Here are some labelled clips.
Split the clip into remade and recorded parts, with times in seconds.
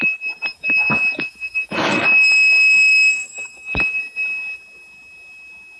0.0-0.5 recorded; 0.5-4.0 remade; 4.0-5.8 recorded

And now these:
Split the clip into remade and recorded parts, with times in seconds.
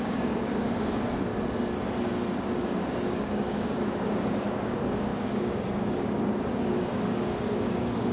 0.0-1.3 remade; 1.3-2.6 recorded; 2.6-8.1 remade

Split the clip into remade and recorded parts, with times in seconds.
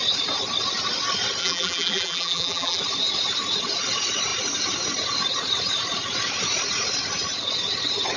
0.0-1.4 recorded; 1.4-2.8 remade; 2.8-8.2 recorded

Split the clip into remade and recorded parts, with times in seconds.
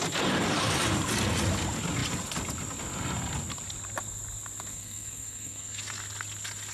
0.0-4.7 recorded; 4.7-5.8 remade; 5.8-6.7 recorded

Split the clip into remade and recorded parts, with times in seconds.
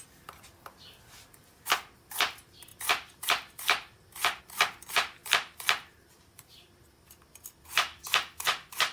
0.0-2.7 recorded; 2.7-4.4 remade; 4.4-5.2 recorded; 5.2-8.0 remade; 8.0-8.9 recorded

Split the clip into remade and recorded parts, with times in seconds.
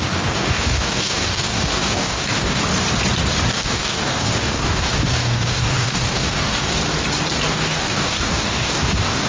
0.0-2.6 remade; 2.6-3.5 recorded; 3.5-6.8 remade; 6.8-7.5 recorded; 7.5-9.3 remade